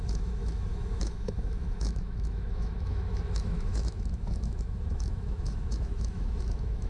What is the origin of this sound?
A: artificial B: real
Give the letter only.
A